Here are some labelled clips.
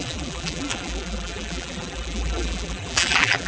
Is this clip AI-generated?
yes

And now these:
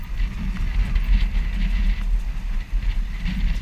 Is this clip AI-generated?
no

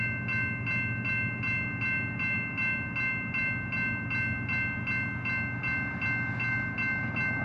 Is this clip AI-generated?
no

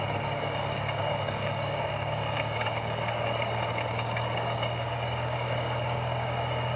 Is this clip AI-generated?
yes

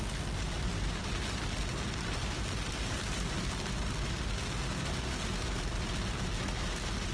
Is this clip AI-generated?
no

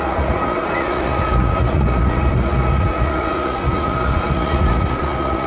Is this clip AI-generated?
yes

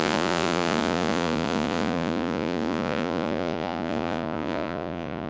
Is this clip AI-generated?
yes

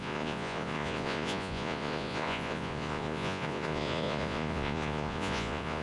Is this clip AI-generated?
yes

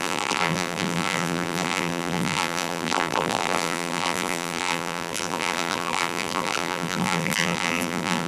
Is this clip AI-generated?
yes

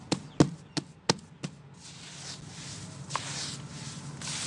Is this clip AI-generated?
no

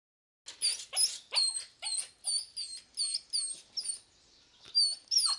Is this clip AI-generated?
no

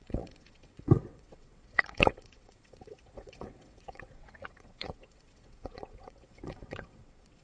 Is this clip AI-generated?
yes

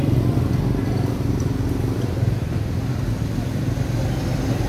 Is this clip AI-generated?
no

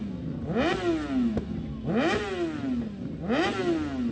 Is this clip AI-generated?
no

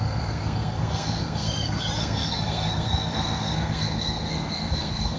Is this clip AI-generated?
yes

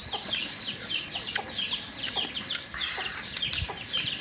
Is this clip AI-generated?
yes